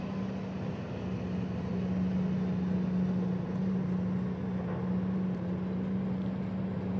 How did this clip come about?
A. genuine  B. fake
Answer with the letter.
A